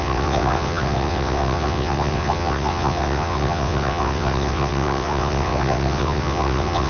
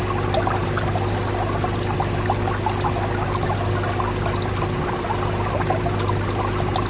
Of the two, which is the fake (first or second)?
first